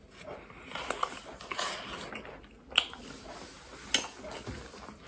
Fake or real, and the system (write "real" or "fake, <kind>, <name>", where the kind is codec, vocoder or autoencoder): real